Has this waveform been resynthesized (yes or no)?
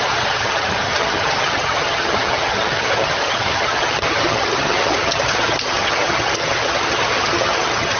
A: yes